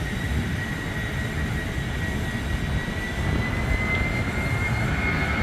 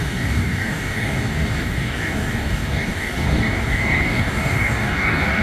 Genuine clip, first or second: first